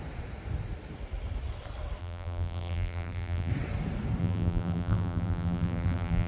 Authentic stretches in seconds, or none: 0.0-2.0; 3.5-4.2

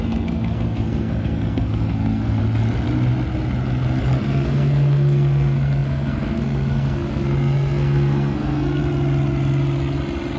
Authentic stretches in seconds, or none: 2.4-4.0; 8.8-10.4